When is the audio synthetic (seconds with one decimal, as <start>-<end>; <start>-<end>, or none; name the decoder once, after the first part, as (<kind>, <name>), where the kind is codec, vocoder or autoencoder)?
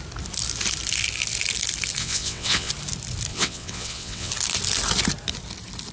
2.0-2.7 (vocoder, WaveNeXt); 3.3-4.3